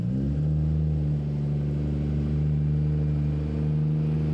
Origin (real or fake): real